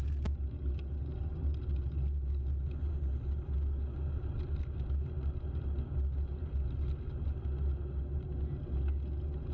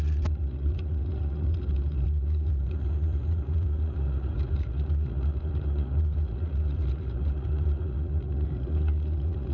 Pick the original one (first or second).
first